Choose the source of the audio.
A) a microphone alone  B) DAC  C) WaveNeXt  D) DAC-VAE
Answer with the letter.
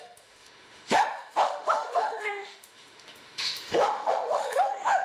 D